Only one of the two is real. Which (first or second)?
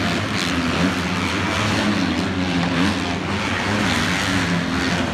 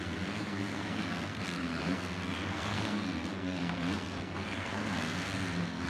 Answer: first